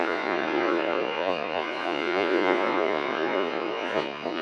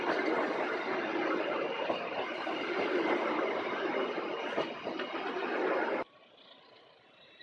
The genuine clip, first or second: second